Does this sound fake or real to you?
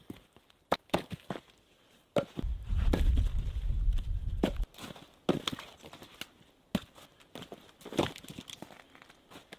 real